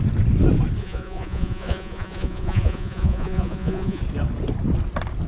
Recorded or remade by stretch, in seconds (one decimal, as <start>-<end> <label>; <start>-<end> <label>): 0.0-0.8 recorded; 0.8-4.0 remade; 4.0-5.3 recorded